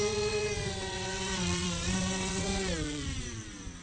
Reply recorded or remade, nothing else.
remade